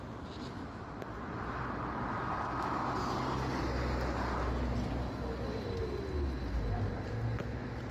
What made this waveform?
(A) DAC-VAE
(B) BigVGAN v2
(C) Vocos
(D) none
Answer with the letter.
D